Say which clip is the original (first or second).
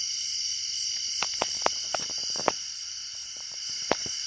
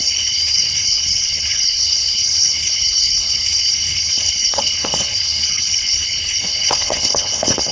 first